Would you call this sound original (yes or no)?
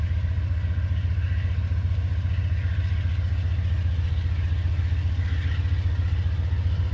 yes